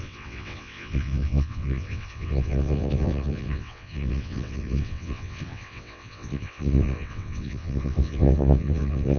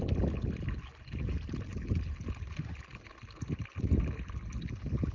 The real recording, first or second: second